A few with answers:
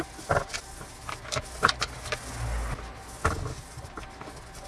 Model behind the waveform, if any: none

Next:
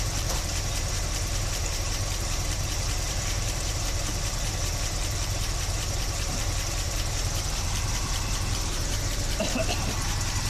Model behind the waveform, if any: vocoder, BigVGAN v2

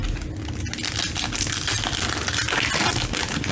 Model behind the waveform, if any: none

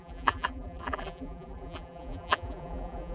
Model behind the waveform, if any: vocoder, BigVGAN v2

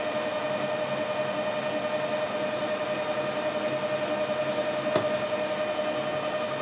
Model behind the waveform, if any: none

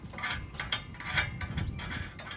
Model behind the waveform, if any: vocoder, BigVGAN v2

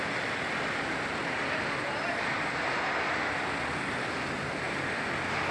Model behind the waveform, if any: none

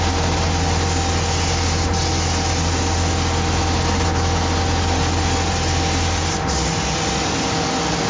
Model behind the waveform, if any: none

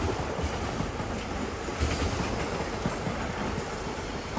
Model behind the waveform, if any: none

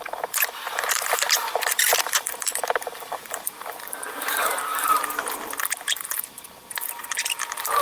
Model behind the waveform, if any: vocoder, BigVGAN v2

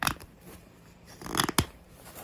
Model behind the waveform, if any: vocoder, BigVGAN v2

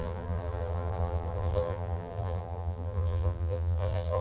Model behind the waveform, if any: vocoder, BigVGAN v2